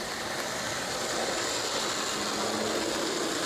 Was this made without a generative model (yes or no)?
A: yes